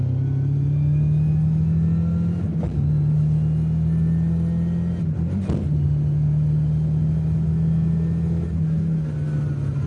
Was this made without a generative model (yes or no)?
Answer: yes